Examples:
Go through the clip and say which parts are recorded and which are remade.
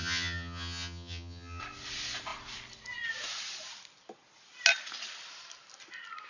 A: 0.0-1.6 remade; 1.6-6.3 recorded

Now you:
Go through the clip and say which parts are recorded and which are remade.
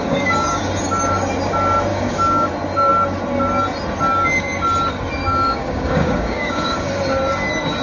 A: 0.0-0.6 remade; 0.6-1.9 recorded; 1.9-2.5 remade; 2.5-5.2 recorded; 5.2-6.9 remade; 6.9-7.8 recorded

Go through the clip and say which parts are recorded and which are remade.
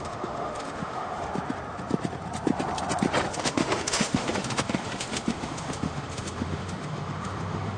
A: 0.0-1.3 remade; 1.3-3.3 recorded; 3.3-7.8 remade